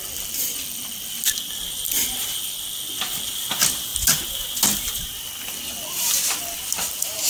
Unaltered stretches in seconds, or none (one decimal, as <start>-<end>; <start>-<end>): 0.0-7.3

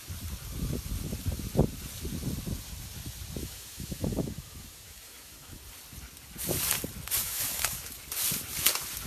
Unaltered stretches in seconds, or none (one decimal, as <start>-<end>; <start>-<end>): 0.0-3.4; 5.6-7.2; 7.9-9.1

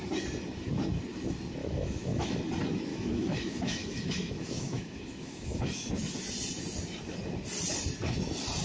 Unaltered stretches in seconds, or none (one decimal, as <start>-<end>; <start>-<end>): 0.0-1.6; 2.4-2.9; 5.9-8.6

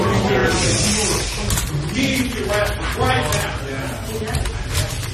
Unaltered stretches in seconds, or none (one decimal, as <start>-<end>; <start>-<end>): 0.0-5.1

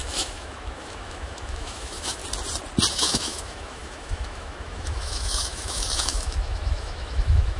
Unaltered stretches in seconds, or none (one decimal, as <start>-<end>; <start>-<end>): 2.2-2.9

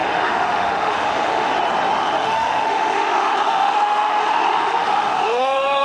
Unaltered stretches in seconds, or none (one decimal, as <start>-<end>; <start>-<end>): 1.5-2.0

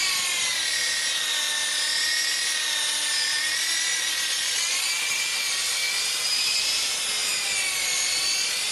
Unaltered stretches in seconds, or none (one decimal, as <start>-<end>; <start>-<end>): 0.0-8.7